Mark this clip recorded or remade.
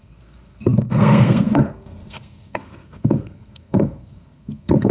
remade